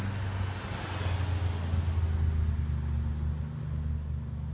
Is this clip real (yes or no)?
yes